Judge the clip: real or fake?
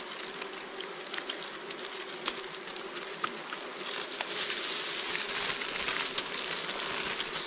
real